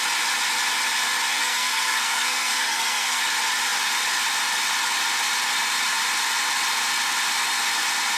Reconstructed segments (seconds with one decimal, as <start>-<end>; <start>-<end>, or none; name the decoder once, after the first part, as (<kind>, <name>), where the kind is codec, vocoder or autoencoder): 1.3-3.2 (codec, SNAC)